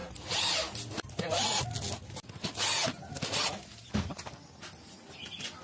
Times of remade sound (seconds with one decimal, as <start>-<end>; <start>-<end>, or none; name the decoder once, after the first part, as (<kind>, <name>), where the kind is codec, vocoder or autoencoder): none